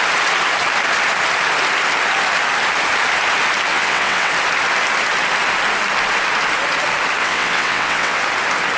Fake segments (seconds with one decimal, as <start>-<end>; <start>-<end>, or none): 3.7-4.3; 7.2-8.2